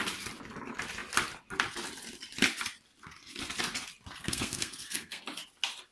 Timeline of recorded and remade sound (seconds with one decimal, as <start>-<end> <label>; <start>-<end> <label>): 0.0-4.2 recorded; 4.2-5.2 remade; 5.2-5.9 recorded